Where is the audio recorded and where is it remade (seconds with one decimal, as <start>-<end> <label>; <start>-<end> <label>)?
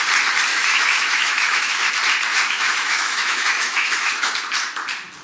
0.0-0.5 recorded; 0.5-1.9 remade; 1.9-2.3 recorded; 2.3-4.3 remade; 4.3-5.2 recorded